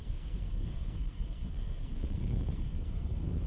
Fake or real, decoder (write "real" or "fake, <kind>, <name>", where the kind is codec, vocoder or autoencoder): fake, codec, SNAC